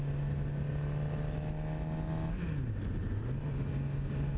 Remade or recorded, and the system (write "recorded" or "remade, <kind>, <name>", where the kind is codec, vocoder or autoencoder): recorded